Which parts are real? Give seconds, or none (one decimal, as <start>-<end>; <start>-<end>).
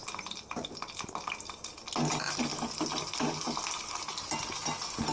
0.0-5.1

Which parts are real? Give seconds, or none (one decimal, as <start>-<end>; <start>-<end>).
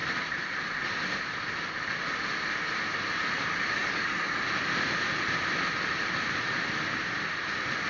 0.0-3.8; 4.4-7.9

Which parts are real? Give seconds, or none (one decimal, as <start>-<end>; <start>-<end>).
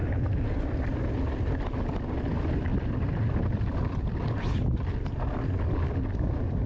0.0-2.7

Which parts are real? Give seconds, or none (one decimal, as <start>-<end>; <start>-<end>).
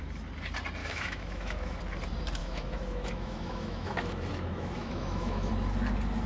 0.0-0.8; 1.8-2.4; 5.5-6.3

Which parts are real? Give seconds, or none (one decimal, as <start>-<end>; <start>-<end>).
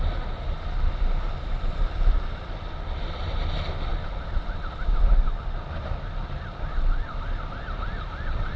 0.0-8.6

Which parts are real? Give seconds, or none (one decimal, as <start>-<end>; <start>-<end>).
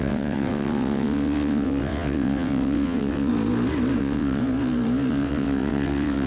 3.3-4.0; 4.4-5.1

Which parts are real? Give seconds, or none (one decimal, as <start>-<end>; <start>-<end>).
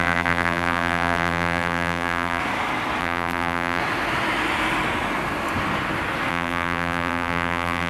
2.4-3.0; 3.8-6.3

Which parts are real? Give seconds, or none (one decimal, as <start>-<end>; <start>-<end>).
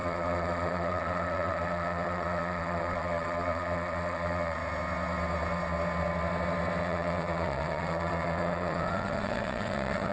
4.6-6.8